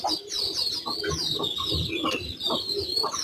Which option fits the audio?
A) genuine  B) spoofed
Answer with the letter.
A